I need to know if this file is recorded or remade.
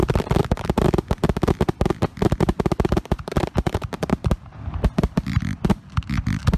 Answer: recorded